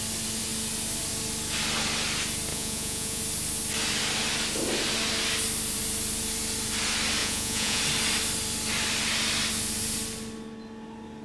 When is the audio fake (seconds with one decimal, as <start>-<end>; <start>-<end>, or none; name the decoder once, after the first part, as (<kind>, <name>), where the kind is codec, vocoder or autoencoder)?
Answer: 2.5-3.2 (vocoder, Vocos); 7.2-7.8